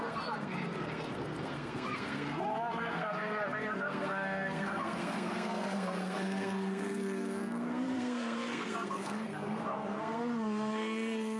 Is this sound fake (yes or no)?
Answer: yes